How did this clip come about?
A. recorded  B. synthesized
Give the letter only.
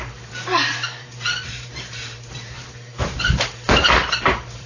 B